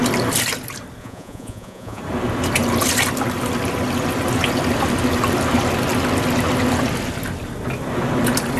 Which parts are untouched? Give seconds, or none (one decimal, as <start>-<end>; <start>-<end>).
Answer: 0.0-1.0; 2.0-8.6

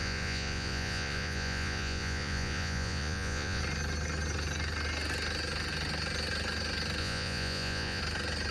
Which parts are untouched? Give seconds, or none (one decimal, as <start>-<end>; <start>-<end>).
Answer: 3.6-7.0; 8.0-8.5

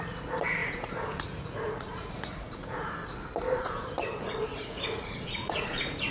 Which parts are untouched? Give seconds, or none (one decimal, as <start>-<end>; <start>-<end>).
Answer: 3.0-3.6

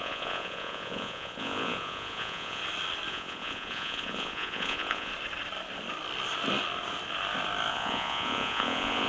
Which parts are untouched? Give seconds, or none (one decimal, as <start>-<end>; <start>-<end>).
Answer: 2.6-3.1; 5.1-7.7